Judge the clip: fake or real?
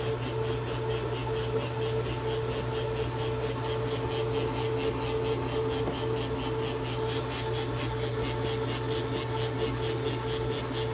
real